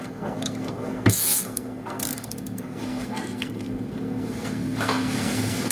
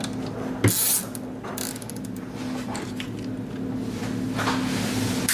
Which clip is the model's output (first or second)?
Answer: first